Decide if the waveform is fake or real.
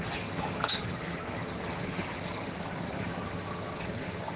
fake